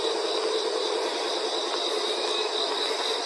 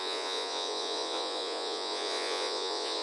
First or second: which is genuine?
first